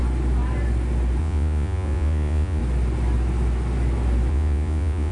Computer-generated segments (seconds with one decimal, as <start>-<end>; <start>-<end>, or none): 1.2-2.6; 4.3-5.1